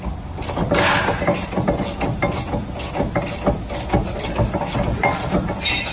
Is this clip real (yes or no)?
yes